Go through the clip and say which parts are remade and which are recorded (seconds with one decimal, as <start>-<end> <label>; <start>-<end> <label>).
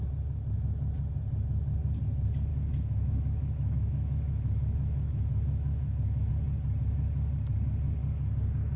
0.0-2.5 recorded; 2.5-6.3 remade; 6.3-8.8 recorded